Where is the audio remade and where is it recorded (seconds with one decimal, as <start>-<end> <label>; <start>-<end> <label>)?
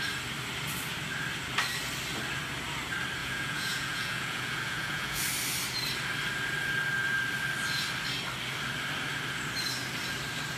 0.0-3.2 recorded; 3.2-5.2 remade; 5.2-10.6 recorded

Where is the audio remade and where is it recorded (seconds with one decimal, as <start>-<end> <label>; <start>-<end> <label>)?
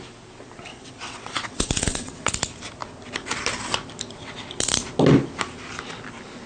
0.0-0.7 recorded; 0.7-2.3 remade; 2.3-6.5 recorded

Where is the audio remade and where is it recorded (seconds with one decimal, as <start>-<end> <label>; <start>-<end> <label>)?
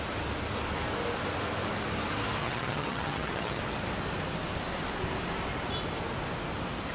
0.0-2.4 recorded; 2.4-3.6 remade; 3.6-6.9 recorded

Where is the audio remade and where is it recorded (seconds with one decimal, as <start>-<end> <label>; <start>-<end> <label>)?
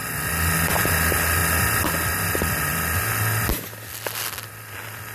0.0-5.1 recorded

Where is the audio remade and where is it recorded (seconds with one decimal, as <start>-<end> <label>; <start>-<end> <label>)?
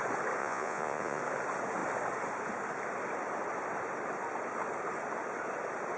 0.0-0.4 recorded; 0.4-1.2 remade; 1.2-6.0 recorded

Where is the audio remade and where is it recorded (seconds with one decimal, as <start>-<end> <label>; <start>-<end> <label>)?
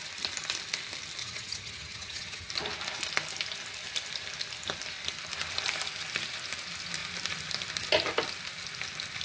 0.0-1.2 recorded; 1.2-2.5 remade; 2.5-9.2 recorded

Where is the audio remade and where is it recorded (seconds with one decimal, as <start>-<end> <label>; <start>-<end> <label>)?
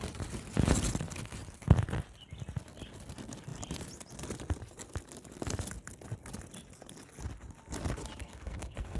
0.0-8.2 recorded; 8.2-9.0 remade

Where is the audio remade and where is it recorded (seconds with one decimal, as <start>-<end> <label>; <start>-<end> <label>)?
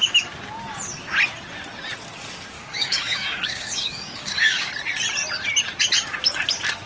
0.0-2.5 recorded; 2.5-4.7 remade; 4.7-6.9 recorded